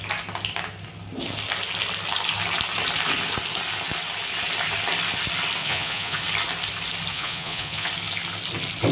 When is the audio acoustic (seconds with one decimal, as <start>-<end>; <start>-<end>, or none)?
0.0-5.6; 6.2-7.1; 7.9-8.9